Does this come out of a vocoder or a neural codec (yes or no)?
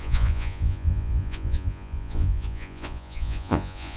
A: yes